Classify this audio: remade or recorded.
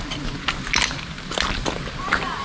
recorded